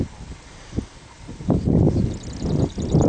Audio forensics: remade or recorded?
remade